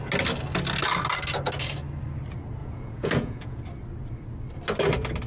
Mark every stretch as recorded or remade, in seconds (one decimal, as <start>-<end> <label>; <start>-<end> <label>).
0.0-2.6 recorded; 2.6-3.6 remade; 3.6-5.3 recorded